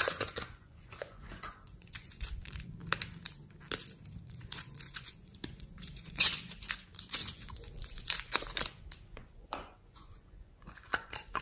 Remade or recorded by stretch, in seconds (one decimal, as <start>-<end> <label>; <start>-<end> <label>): 0.0-2.8 remade; 2.8-4.2 recorded; 4.2-11.4 remade